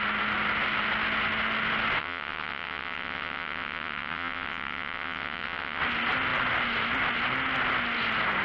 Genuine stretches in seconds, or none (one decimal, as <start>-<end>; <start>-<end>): 0.0-2.0; 5.8-8.4